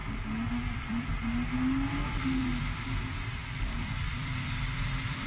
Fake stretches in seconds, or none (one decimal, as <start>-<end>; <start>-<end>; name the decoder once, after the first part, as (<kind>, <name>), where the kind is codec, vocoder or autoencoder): 0.5-1.1 (vocoder, BigVGAN v2); 2.4-5.3